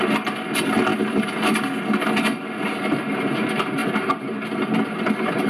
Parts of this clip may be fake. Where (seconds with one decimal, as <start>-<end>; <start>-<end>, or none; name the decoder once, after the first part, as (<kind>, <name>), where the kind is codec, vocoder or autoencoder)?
none